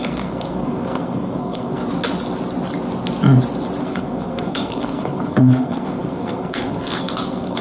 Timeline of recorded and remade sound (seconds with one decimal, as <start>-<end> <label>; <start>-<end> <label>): 0.0-1.8 remade; 1.8-3.8 recorded; 3.8-7.6 remade